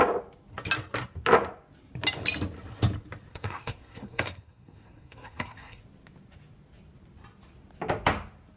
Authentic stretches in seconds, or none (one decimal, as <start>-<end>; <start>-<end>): 0.0-3.3; 5.8-8.6